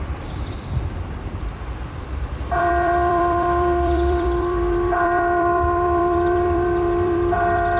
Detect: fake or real fake